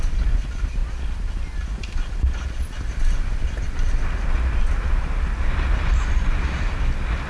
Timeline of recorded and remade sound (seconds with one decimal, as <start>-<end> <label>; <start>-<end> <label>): 0.0-7.3 recorded